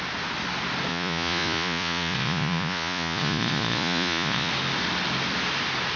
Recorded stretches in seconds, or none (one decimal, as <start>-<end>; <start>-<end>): 0.0-0.9; 4.5-6.0